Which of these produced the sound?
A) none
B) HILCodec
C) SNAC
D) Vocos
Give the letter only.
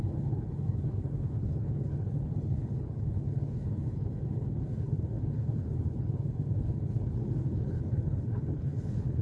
B